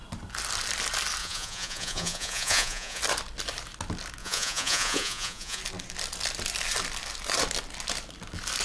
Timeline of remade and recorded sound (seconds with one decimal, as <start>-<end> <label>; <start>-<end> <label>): 0.0-1.2 recorded; 1.2-3.0 remade; 3.0-4.2 recorded; 4.2-5.6 remade; 5.6-8.6 recorded